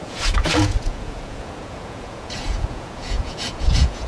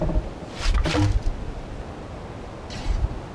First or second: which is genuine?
second